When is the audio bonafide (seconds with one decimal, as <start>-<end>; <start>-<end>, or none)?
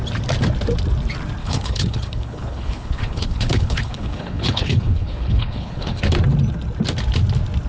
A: 0.0-1.4; 6.0-7.7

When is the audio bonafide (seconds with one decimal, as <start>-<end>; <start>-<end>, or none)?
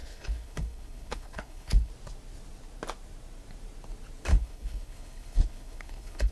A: 1.9-4.3